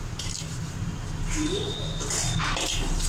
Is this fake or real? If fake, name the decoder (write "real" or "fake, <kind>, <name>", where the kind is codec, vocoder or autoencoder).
real